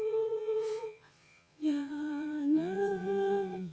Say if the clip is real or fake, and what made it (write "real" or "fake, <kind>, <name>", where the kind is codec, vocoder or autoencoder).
fake, vocoder, Vocos